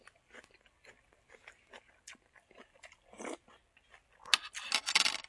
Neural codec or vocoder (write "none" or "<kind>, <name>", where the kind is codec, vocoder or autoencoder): none